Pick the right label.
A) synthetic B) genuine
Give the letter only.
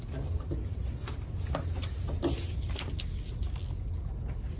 B